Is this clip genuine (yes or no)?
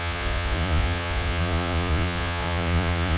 no